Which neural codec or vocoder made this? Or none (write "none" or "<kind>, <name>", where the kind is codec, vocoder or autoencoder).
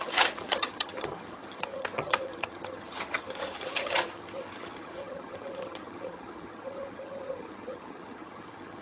vocoder, HiFi-GAN